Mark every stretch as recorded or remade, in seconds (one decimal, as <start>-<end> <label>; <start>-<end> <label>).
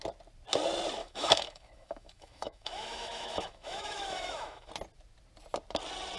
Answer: 0.0-1.0 recorded; 1.0-4.7 remade; 4.7-6.2 recorded